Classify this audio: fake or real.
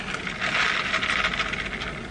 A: real